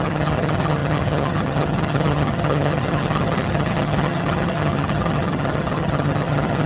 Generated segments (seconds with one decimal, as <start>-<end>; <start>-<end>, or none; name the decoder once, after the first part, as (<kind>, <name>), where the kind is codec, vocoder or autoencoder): 0.0-6.7 (vocoder, HiFi-GAN)